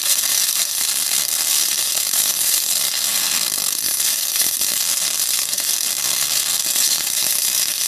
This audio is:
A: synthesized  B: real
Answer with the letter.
A